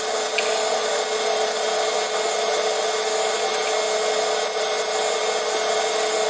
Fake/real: real